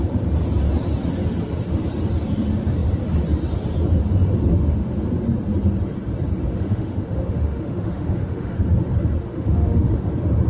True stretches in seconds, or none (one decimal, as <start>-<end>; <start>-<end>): 0.0-4.5; 5.1-6.5; 8.6-9.2; 10.1-10.5